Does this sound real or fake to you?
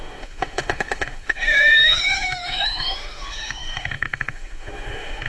fake